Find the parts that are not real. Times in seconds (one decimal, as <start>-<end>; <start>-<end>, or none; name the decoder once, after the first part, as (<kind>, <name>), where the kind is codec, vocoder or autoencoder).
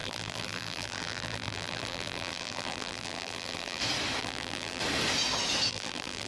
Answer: 0.0-3.8 (vocoder, BigVGAN v2); 4.2-4.8; 5.7-6.3